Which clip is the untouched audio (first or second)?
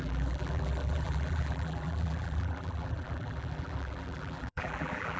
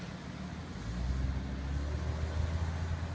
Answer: second